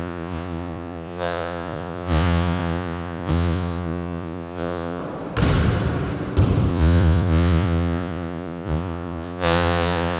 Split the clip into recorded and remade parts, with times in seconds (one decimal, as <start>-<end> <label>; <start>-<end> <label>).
0.0-5.0 remade; 5.0-6.7 recorded; 6.7-10.2 remade